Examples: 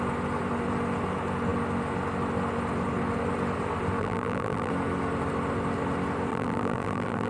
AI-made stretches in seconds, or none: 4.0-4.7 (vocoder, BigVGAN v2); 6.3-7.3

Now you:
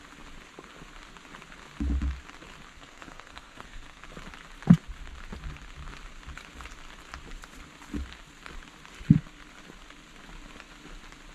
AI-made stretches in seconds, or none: 2.7-4.1 (codec, SNAC)

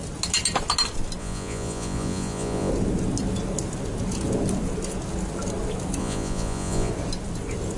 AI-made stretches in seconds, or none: 1.2-2.7 (vocoder, Vocos); 6.0-6.9